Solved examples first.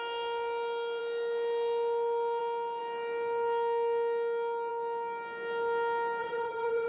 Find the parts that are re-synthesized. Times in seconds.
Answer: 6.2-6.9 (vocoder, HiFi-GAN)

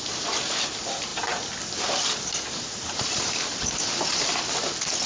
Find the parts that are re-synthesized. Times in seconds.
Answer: none

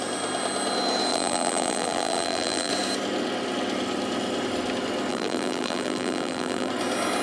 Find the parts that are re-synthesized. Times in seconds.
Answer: 1.1-2.7 (vocoder, BigVGAN v2); 5.1-6.7